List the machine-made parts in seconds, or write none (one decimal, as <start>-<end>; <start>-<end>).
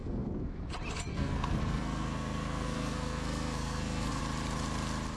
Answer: 0.0-0.6; 1.1-4.2